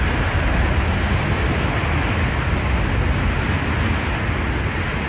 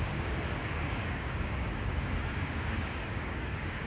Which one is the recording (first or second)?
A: first